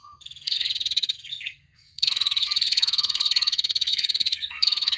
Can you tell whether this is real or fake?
fake